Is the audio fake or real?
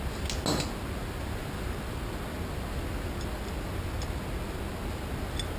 real